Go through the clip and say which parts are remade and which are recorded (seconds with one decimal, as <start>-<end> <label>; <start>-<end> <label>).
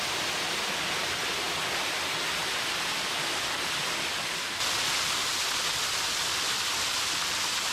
0.0-7.7 recorded